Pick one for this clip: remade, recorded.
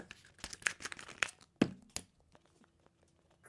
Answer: recorded